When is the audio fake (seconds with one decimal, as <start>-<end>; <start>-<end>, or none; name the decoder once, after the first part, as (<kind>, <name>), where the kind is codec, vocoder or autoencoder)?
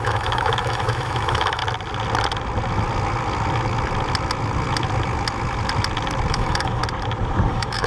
0.0-1.6 (autoencoder, DAC-VAE); 6.3-6.8; 7.5-7.9